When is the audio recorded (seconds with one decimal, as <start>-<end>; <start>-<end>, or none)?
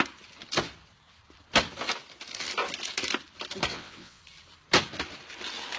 0.0-3.7; 4.2-5.8